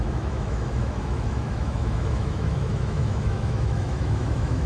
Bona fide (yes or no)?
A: no